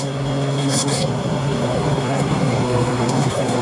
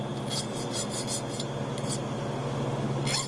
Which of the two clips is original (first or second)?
second